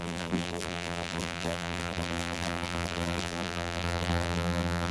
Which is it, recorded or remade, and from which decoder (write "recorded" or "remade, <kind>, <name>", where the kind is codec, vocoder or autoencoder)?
remade, vocoder, BigVGAN v2